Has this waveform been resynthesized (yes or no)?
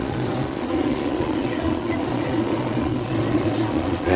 yes